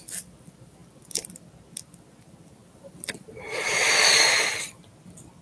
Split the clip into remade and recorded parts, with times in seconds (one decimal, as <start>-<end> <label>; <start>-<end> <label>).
0.0-5.4 recorded